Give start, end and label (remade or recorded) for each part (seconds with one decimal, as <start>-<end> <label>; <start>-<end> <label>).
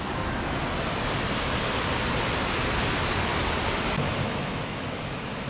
0.0-0.6 remade; 0.6-3.9 recorded; 3.9-5.5 remade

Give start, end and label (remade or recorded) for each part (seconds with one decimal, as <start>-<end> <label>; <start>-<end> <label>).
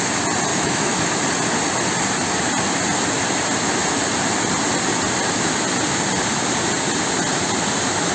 0.0-0.5 recorded; 0.5-1.2 remade; 1.2-8.1 recorded